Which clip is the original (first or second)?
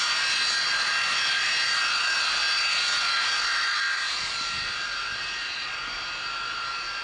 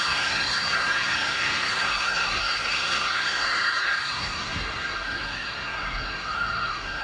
first